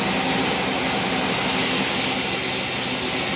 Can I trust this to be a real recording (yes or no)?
yes